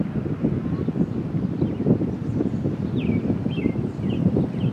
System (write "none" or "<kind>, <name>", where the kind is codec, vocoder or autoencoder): none